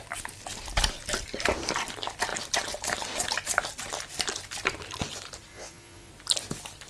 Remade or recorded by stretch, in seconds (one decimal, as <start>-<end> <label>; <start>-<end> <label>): 0.0-5.5 recorded; 5.5-6.1 remade; 6.1-6.9 recorded